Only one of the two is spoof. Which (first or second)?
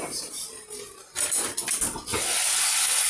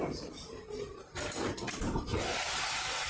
second